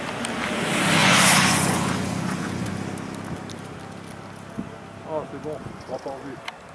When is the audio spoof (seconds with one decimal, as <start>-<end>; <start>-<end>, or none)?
1.0-2.7; 5.6-6.1